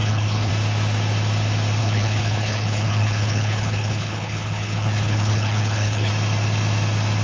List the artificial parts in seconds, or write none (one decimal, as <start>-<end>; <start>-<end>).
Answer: 0.0-0.5; 1.8-6.1

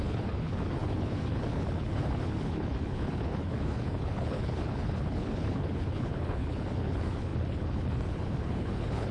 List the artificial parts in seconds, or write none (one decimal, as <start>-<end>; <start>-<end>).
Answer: 0.0-9.1

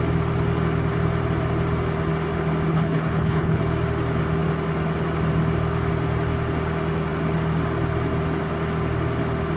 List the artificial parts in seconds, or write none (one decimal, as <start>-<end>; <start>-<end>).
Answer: 2.7-3.6